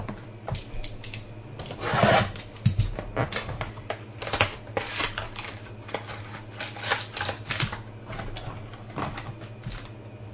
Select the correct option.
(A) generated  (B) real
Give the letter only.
B